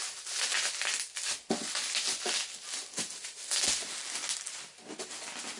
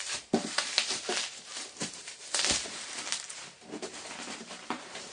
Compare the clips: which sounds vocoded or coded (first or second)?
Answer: second